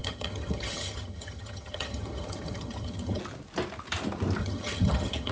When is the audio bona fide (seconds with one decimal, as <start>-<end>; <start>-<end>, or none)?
3.2-4.4